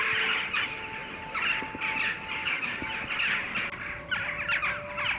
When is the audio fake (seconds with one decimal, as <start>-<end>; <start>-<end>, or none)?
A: 2.4-2.9

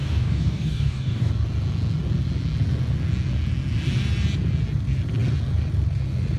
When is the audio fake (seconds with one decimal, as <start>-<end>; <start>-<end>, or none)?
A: 0.0-1.3

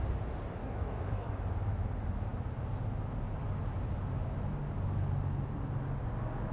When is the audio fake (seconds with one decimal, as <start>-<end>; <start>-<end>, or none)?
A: 0.6-1.3

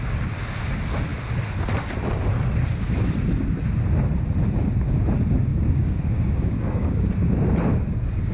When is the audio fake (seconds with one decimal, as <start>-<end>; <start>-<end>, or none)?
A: 5.5-7.1; 7.7-8.3

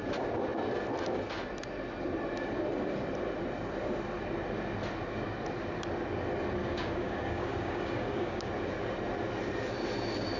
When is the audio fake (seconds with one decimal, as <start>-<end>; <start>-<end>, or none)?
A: 6.6-8.5

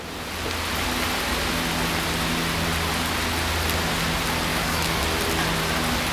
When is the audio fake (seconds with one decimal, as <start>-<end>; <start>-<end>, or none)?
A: 4.5-5.0